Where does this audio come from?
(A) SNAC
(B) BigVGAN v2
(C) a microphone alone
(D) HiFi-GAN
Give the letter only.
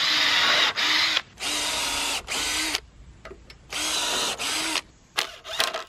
B